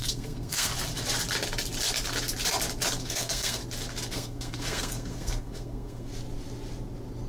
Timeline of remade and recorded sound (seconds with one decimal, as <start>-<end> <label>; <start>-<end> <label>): 0.0-0.7 remade; 0.7-3.0 recorded; 3.0-3.6 remade; 3.6-4.1 recorded; 4.1-6.1 remade; 6.1-7.3 recorded